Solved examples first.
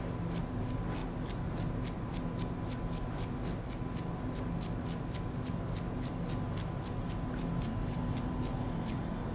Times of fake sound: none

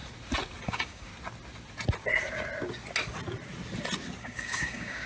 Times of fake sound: 0.6-1.1 (codec, DAC); 4.2-5.1

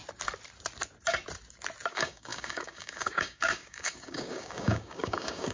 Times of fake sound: 1.9-5.5 (codec, DAC)

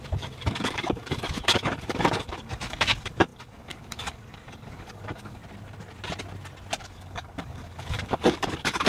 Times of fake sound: 0.0-5.4 (codec, DAC); 6.8-8.9

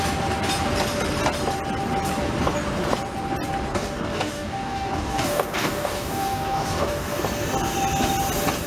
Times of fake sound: 3.7-7.2 (codec, DAC)

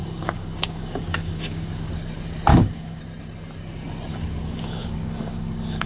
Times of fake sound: 0.0-1.9 (codec, DAC); 2.5-3.0; 4.1-5.9

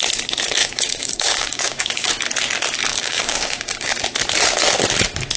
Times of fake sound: 0.6-2.1 (codec, DAC); 2.9-3.9